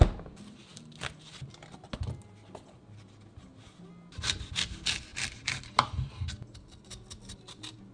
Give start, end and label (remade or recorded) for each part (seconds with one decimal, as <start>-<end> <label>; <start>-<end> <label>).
0.0-7.9 recorded